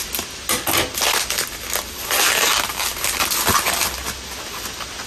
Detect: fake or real real